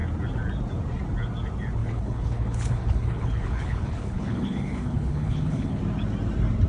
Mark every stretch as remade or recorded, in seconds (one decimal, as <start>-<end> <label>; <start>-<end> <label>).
0.0-1.8 recorded; 1.8-5.8 remade; 5.8-6.7 recorded